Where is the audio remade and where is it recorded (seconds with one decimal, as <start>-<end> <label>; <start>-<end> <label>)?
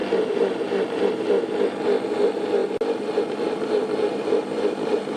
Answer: 0.0-5.2 recorded